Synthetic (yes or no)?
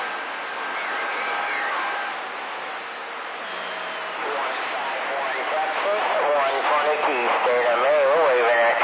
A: no